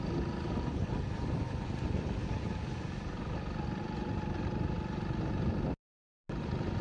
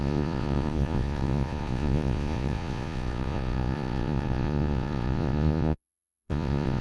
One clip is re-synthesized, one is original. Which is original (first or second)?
first